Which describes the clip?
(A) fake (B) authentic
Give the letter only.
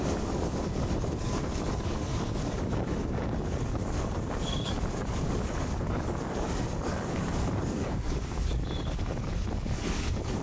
A